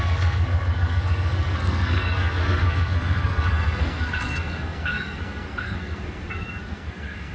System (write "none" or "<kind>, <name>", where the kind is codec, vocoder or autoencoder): codec, SNAC